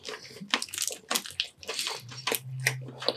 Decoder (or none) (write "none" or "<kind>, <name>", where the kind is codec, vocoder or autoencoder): none